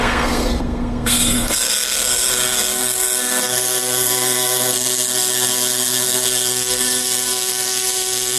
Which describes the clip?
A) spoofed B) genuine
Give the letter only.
A